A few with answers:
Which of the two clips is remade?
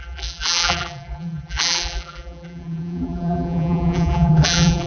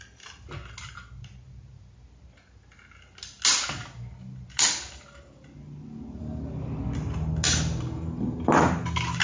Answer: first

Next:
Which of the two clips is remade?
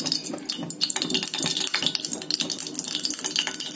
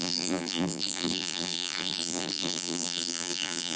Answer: second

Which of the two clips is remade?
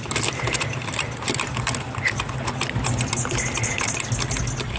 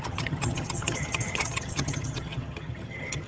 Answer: second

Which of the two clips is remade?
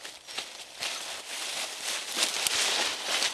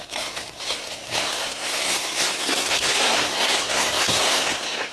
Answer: second